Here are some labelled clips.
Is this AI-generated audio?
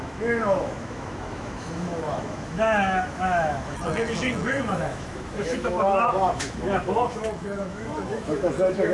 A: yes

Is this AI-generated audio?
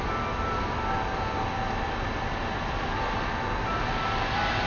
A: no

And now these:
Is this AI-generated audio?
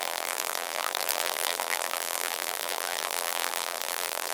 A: yes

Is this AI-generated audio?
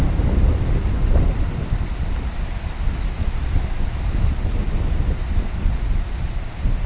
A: no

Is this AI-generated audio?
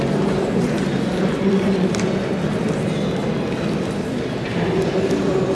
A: yes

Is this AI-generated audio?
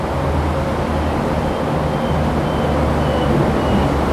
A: no